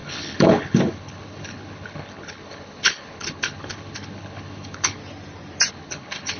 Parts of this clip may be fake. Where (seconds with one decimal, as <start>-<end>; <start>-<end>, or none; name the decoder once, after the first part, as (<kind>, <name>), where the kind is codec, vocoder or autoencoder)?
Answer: 0.0-5.0 (codec, HILCodec); 5.7-6.4